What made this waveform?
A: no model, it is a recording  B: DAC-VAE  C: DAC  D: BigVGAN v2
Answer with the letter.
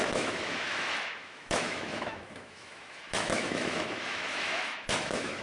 B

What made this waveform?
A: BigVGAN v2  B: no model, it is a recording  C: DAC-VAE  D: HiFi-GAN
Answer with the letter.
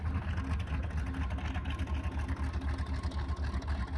B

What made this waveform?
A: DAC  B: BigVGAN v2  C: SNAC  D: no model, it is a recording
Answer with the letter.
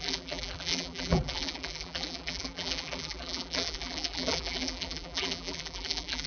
B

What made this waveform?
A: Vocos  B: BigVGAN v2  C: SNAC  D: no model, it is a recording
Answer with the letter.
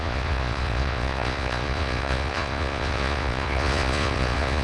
A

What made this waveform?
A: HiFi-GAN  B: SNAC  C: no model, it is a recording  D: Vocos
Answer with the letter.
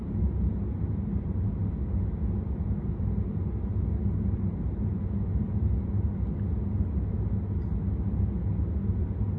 C